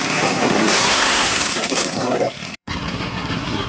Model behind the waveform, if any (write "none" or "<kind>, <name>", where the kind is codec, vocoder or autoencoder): codec, SNAC